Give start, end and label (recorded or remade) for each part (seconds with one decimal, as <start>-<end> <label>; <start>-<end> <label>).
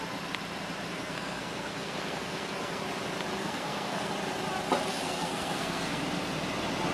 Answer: 0.0-0.9 recorded; 0.9-2.8 remade; 2.8-3.4 recorded; 3.4-4.1 remade; 4.1-4.9 recorded; 4.9-6.0 remade; 6.0-6.9 recorded